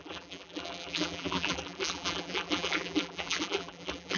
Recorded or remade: remade